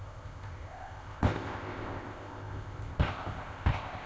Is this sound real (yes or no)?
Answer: no